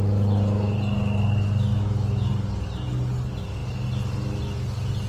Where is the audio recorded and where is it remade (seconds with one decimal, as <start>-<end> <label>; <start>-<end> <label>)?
0.0-1.7 recorded; 1.7-2.3 remade; 2.3-5.1 recorded